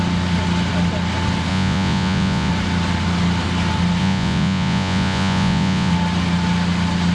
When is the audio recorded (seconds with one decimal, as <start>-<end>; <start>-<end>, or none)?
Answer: 0.0-1.5; 2.5-4.0; 5.9-7.1